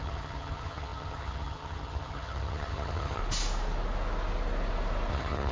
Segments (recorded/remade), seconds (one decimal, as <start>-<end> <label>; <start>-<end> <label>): 0.0-3.2 remade; 3.2-5.1 recorded; 5.1-5.5 remade